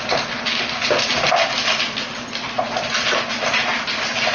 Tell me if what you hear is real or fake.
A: real